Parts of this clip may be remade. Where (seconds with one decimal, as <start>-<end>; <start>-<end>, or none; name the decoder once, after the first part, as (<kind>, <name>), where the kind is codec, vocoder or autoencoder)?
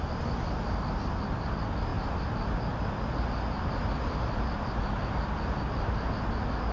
none